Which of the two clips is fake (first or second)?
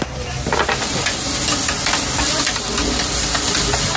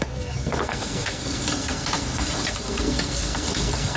second